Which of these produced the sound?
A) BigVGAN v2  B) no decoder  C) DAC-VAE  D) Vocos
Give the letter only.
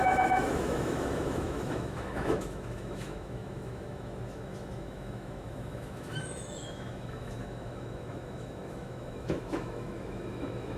C